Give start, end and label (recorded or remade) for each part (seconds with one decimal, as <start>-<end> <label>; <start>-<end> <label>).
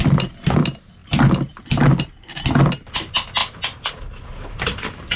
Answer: 0.0-5.2 recorded